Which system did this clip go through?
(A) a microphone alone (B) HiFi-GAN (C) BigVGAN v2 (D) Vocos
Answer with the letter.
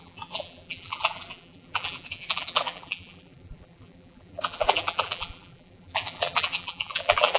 C